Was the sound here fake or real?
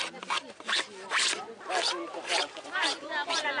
real